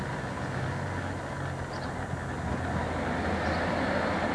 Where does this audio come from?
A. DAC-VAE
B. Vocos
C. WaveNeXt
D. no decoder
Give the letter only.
D